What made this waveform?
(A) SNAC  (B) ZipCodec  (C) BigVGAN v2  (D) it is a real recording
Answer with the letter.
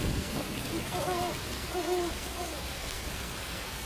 A